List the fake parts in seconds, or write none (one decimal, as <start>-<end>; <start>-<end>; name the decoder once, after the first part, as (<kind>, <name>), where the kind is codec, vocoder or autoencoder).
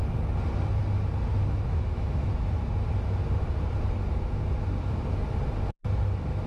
1.3-2.3 (autoencoder, DAC-VAE)